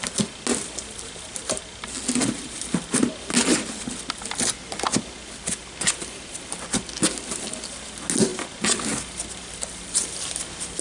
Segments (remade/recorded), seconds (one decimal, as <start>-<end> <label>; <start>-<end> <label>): 0.0-10.8 recorded